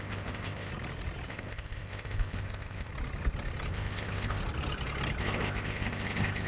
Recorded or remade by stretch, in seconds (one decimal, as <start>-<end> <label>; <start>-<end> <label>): 0.0-0.7 remade; 0.7-1.3 recorded; 1.3-2.9 remade; 2.9-3.7 recorded; 3.7-4.4 remade; 4.4-5.2 recorded; 5.2-6.5 remade